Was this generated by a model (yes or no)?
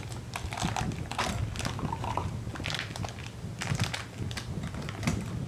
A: no